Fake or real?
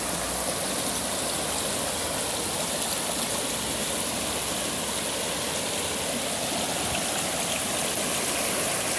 real